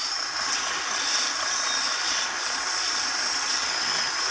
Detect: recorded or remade recorded